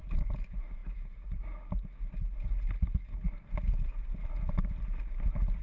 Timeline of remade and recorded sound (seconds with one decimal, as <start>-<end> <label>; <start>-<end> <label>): 0.0-5.6 recorded